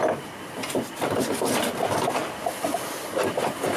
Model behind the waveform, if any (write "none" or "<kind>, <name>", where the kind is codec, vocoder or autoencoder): none